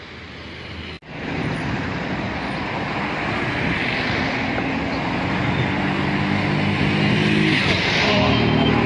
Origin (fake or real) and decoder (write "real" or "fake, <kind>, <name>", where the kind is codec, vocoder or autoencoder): real